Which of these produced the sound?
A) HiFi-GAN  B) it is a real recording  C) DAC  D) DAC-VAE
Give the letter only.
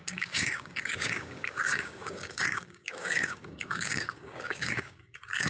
C